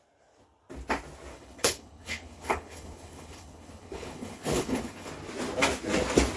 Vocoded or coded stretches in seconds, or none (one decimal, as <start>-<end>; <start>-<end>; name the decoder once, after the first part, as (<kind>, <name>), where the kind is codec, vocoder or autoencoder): 1.3-5.1 (codec, HILCodec)